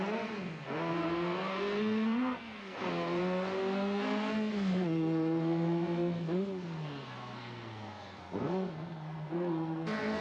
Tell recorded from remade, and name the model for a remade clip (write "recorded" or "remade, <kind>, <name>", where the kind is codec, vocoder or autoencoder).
remade, codec, SNAC